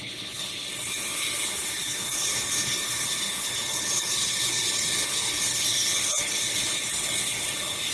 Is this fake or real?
fake